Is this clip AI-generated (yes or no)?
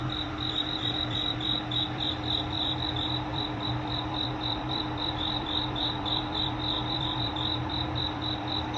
yes